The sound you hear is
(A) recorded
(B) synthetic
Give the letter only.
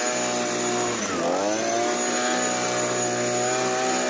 A